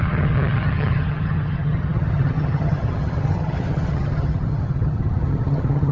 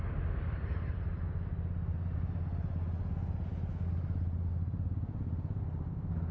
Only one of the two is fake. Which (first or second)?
first